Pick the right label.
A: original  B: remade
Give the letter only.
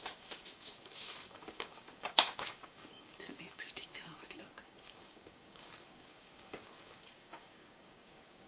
B